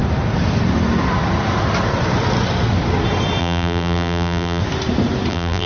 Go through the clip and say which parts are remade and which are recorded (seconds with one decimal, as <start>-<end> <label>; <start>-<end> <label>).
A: 0.0-3.4 recorded; 3.4-4.6 remade; 4.6-5.3 recorded; 5.3-5.7 remade